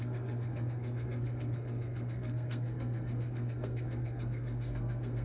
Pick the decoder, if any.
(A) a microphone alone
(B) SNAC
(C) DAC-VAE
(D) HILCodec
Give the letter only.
B